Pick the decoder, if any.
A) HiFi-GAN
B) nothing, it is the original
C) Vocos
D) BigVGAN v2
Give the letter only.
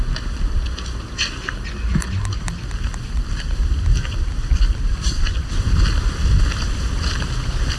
D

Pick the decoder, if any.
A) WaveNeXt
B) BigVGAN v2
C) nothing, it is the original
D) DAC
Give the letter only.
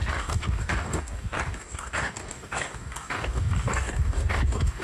D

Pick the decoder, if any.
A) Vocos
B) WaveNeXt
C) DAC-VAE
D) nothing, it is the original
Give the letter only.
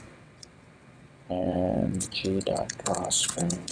B